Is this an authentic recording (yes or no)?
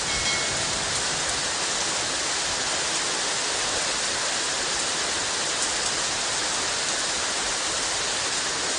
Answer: yes